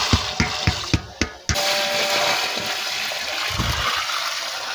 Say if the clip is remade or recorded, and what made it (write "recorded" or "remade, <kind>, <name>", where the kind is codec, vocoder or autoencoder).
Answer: recorded